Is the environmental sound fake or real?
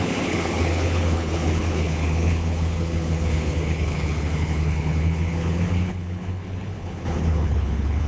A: fake